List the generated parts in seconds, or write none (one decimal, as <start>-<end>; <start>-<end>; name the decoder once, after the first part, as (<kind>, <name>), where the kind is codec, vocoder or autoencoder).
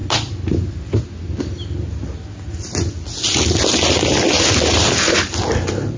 none